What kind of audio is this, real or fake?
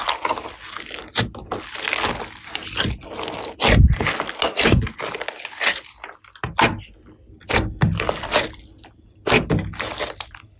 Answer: real